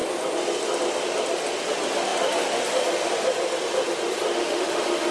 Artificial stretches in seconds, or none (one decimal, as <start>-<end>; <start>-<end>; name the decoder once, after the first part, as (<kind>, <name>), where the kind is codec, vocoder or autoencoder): 4.3-5.1 (autoencoder, DAC-VAE)